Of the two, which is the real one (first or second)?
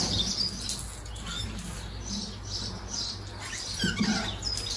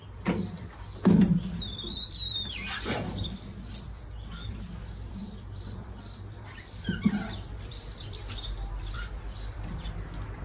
first